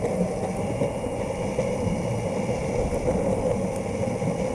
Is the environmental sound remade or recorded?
recorded